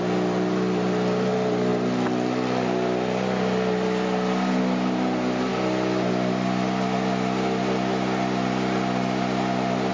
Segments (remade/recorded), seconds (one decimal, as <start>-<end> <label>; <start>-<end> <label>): 0.0-9.9 recorded